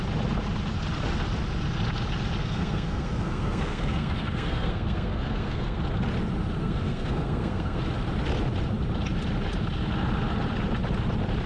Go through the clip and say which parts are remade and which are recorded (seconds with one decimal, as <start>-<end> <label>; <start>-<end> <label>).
0.0-2.4 recorded; 2.4-5.8 remade; 5.8-6.6 recorded; 6.6-7.8 remade; 7.8-11.5 recorded